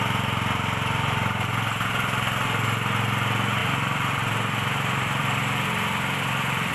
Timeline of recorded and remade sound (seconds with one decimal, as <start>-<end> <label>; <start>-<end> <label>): 0.0-3.6 recorded; 3.6-6.7 remade